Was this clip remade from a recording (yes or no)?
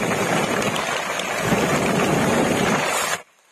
no